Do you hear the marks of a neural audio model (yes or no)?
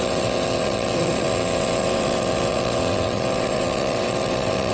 yes